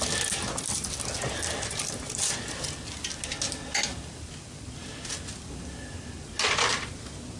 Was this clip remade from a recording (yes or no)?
no